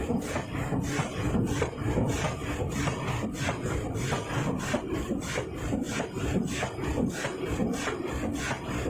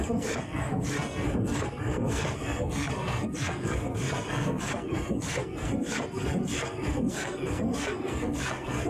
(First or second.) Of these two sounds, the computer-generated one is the second